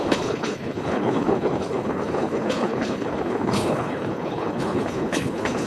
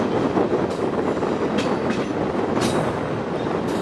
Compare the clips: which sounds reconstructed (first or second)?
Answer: first